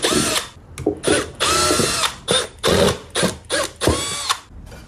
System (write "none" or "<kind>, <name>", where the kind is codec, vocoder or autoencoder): none